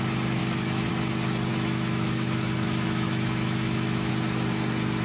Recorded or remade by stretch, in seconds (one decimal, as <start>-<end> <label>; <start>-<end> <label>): 0.0-0.4 recorded; 0.4-0.9 remade; 0.9-1.5 recorded; 1.5-4.1 remade; 4.1-5.0 recorded

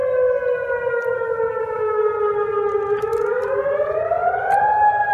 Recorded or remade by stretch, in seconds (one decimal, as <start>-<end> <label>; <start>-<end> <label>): 0.0-1.6 recorded; 1.6-2.0 remade; 2.0-5.1 recorded

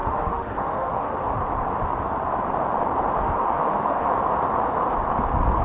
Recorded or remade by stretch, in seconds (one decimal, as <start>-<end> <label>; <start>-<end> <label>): 0.0-1.2 remade; 1.2-3.2 recorded; 3.2-4.1 remade; 4.1-5.6 recorded

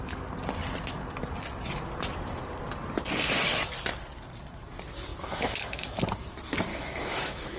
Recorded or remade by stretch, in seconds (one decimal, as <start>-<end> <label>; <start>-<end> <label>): 0.0-5.1 recorded; 5.1-6.0 remade; 6.0-6.7 recorded; 6.7-7.6 remade

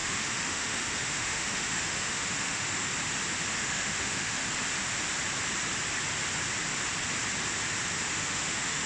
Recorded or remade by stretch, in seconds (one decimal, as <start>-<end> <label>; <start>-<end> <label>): 0.0-2.9 remade; 2.9-3.6 recorded; 3.6-4.4 remade; 4.4-8.1 recorded; 8.1-8.9 remade

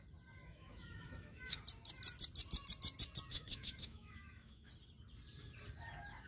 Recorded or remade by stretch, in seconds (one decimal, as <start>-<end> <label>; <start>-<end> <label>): 0.0-0.4 recorded; 0.4-1.6 remade; 1.6-3.3 recorded; 3.3-4.7 remade; 4.7-6.3 recorded